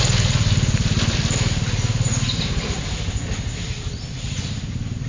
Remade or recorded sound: recorded